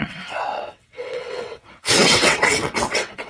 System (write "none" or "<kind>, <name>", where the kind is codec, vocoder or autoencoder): vocoder, WaveNeXt